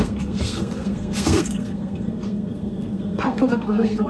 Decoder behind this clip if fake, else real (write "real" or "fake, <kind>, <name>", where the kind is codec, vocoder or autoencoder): fake, codec, SNAC